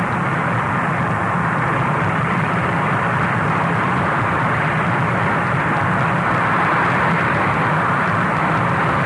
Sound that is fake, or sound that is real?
fake